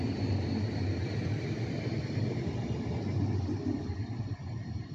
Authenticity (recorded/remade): recorded